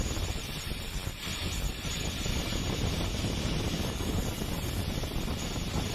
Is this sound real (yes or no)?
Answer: yes